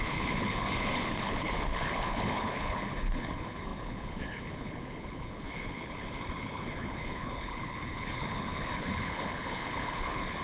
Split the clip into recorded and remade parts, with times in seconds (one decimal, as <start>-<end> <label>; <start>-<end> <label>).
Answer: 0.0-10.4 remade